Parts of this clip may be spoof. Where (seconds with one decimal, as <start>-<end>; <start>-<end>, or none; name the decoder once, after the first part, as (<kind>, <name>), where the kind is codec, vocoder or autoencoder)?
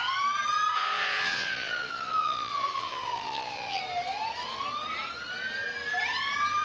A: 0.7-3.8 (vocoder, Vocos)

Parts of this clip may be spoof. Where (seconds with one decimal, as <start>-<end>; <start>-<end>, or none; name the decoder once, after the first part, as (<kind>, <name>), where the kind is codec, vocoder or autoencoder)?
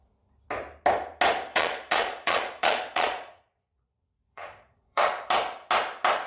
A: 1.5-5.3 (vocoder, Vocos)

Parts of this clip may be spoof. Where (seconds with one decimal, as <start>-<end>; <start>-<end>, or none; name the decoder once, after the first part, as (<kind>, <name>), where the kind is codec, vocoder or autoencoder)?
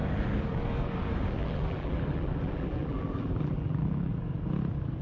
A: 1.4-4.1 (vocoder, BigVGAN v2)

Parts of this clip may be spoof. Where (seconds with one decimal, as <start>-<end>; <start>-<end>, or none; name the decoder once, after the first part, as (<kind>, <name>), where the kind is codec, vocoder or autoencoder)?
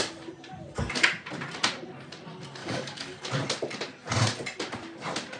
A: 2.6-3.3 (codec, DAC)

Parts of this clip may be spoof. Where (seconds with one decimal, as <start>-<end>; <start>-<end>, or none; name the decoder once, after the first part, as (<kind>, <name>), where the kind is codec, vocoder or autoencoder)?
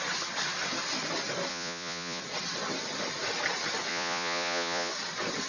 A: 1.5-2.2 (vocoder, Vocos); 3.9-4.9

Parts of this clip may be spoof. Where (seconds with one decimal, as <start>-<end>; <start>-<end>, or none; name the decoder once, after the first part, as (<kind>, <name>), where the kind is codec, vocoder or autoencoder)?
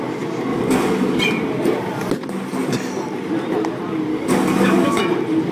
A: 0.5-1.2 (codec, DAC); 4.1-5.0